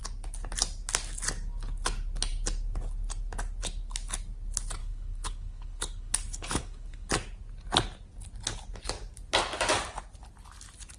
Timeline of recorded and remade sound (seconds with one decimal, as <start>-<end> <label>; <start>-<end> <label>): 0.0-4.8 recorded; 4.8-7.1 remade; 7.1-11.0 recorded